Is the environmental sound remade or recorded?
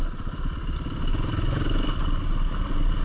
recorded